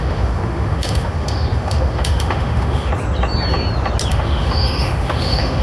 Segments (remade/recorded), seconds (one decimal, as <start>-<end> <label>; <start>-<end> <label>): 0.0-2.9 remade; 2.9-4.1 recorded; 4.1-5.6 remade